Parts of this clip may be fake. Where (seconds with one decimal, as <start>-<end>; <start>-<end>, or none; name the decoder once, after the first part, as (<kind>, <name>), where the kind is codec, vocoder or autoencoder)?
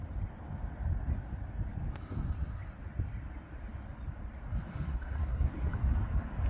4.7-5.5 (codec, SNAC)